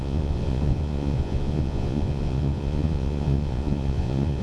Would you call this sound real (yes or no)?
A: no